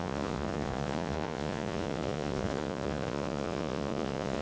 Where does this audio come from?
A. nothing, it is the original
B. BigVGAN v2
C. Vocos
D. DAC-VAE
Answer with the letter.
C